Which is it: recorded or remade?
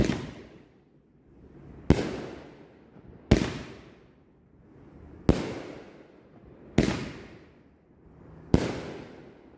recorded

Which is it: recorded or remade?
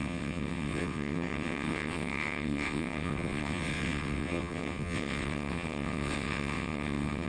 remade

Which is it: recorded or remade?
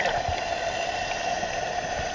recorded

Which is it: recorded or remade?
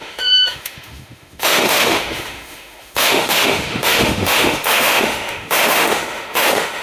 remade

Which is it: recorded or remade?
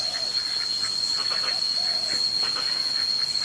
recorded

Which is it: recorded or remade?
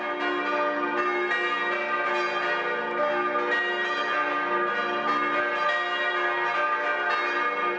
recorded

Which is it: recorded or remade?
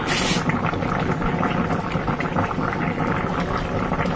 recorded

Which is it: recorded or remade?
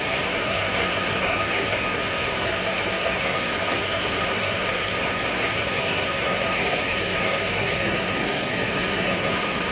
remade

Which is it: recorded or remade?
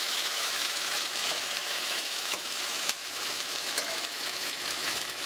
remade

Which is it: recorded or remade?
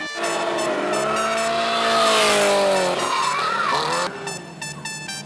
recorded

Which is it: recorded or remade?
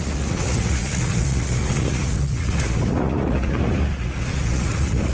remade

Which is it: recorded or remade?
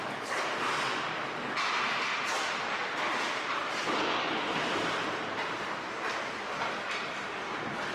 recorded